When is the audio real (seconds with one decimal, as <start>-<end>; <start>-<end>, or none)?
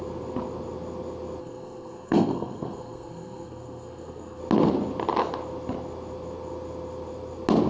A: 0.0-1.4; 4.4-7.7